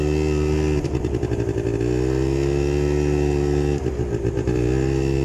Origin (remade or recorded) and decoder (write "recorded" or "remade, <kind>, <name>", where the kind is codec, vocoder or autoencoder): recorded